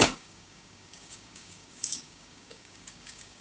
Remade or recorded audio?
remade